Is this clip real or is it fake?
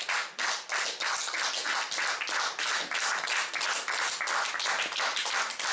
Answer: real